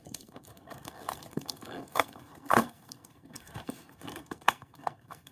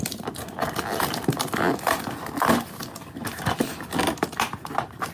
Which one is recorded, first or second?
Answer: second